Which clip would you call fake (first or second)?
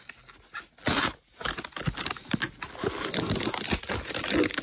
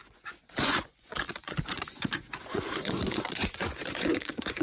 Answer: second